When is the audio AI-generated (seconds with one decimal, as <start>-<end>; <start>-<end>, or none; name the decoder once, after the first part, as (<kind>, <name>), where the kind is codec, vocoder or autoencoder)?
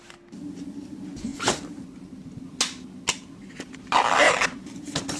none